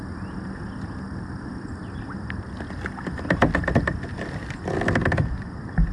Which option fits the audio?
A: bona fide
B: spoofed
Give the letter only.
A